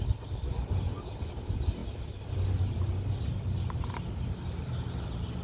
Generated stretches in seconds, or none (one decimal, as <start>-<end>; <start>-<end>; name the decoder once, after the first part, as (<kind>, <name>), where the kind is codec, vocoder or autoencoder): none